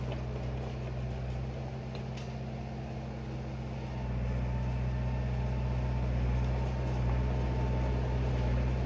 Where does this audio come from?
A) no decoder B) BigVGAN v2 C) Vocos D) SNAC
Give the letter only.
A